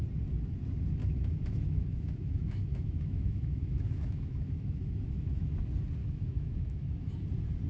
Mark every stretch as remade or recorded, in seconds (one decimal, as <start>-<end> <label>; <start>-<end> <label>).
0.0-1.0 recorded; 1.0-5.6 remade; 5.6-6.0 recorded; 6.0-7.1 remade; 7.1-7.7 recorded